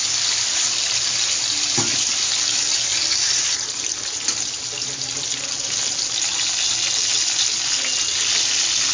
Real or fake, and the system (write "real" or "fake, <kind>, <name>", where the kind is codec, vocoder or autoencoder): real